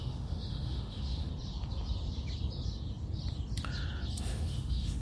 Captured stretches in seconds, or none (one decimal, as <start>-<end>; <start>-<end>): 1.3-4.2